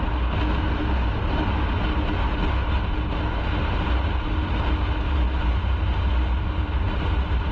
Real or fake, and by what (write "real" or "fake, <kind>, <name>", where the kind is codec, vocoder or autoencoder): real